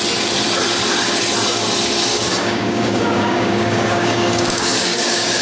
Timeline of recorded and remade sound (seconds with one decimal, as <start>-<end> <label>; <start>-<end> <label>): 0.0-2.1 recorded; 2.1-5.4 remade